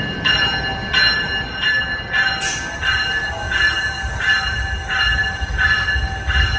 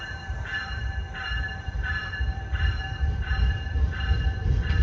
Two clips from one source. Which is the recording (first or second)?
first